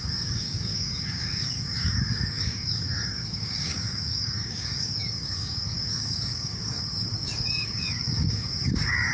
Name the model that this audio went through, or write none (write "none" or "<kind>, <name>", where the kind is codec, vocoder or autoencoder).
codec, DAC